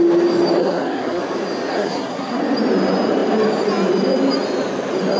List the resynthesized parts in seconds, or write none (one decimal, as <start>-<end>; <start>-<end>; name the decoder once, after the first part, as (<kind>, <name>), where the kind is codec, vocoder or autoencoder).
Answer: 0.6-1.2 (codec, SNAC); 1.7-2.4

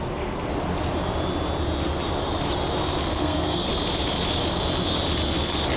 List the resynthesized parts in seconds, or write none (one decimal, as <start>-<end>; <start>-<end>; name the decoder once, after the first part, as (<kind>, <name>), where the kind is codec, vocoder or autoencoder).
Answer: 0.0-0.5 (codec, SNAC); 3.1-3.7